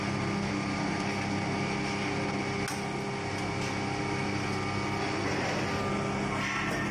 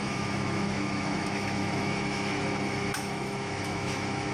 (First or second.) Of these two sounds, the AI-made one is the second